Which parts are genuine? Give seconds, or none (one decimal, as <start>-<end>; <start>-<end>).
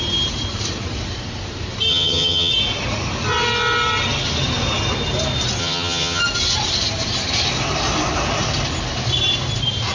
0.0-1.9; 2.5-5.6; 6.2-9.9